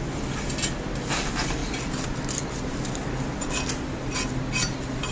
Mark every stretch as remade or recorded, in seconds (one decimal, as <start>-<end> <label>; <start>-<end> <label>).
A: 0.0-5.1 recorded